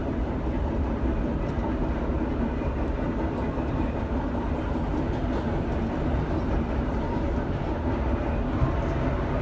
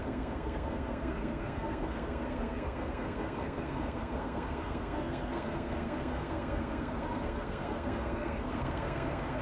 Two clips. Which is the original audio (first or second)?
first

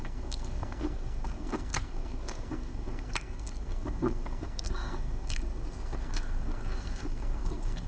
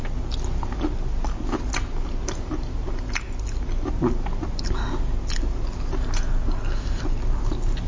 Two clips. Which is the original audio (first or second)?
second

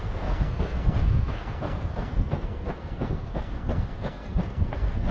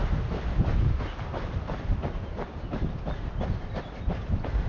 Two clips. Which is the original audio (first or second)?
second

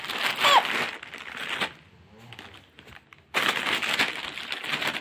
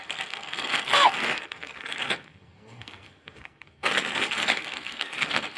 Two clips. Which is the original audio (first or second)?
first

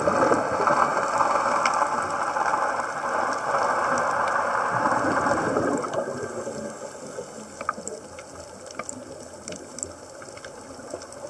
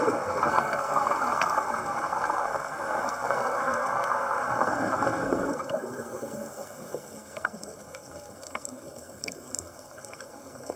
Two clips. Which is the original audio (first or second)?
first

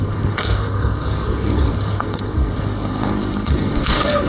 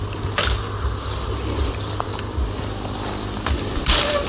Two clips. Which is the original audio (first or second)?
second